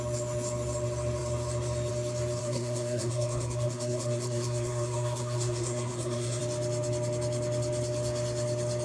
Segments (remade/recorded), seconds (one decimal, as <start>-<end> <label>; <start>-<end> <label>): 0.0-2.4 recorded; 2.4-6.4 remade; 6.4-8.8 recorded